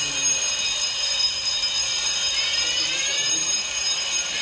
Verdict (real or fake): real